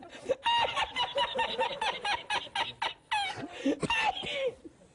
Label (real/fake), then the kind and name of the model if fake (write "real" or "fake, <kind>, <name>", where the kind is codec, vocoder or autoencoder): real